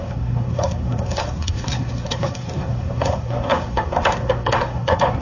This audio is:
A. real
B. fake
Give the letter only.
B